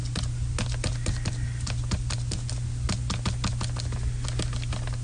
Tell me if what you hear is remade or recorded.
recorded